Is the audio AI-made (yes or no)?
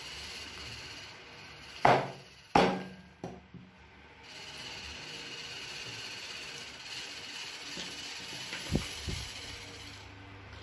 no